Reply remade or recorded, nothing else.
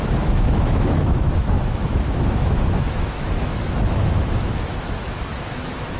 remade